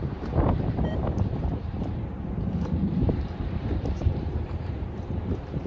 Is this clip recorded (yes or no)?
no